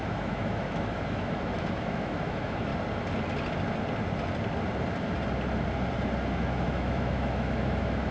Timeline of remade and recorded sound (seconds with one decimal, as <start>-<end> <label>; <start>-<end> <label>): 0.0-2.7 remade; 2.7-6.3 recorded; 6.3-8.1 remade